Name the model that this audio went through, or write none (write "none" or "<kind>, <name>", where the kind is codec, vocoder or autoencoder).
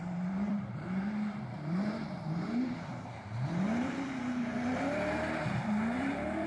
vocoder, BigVGAN v2